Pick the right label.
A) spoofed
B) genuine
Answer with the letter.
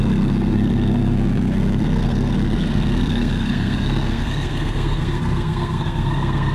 A